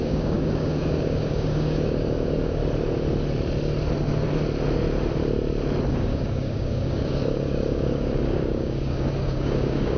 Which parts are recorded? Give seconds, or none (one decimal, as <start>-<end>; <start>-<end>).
2.6-5.9